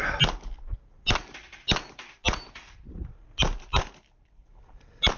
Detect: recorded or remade recorded